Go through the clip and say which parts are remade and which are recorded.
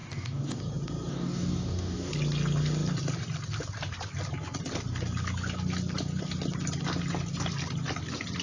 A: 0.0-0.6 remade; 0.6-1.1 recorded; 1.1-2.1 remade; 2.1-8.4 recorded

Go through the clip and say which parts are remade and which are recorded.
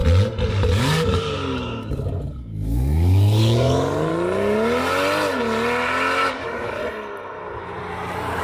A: 0.0-0.5 recorded; 0.5-4.1 remade; 4.1-6.3 recorded; 6.3-6.8 remade; 6.8-8.4 recorded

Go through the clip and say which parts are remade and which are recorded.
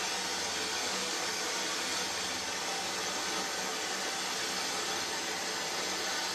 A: 0.0-0.7 recorded; 0.7-1.4 remade; 1.4-6.3 recorded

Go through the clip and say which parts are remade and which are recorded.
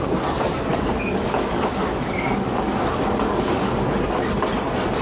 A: 0.0-0.7 recorded; 0.7-3.7 remade; 3.7-5.0 recorded